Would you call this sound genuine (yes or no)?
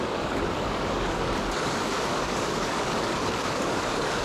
no